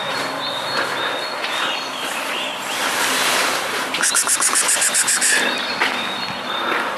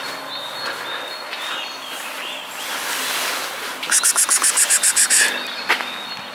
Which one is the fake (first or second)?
first